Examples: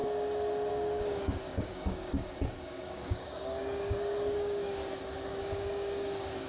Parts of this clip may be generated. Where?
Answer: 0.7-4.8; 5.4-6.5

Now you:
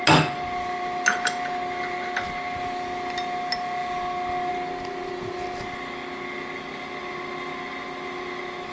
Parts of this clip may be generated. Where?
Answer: none

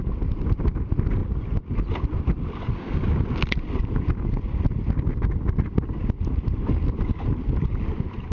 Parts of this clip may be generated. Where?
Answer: none

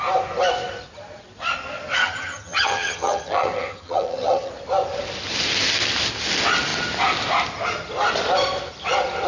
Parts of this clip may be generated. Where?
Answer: 2.0-4.5